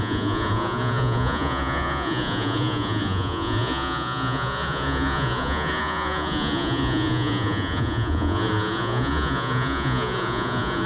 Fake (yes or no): yes